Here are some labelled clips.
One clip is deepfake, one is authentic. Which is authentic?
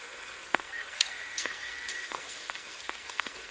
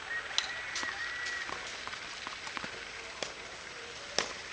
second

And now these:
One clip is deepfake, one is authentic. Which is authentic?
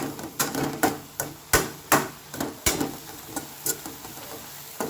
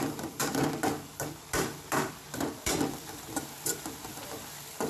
first